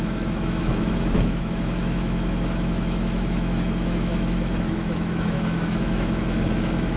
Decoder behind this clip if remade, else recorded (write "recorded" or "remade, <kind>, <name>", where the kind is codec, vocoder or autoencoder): remade, autoencoder, DAC-VAE